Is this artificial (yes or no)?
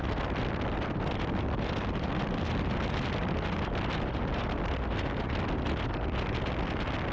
no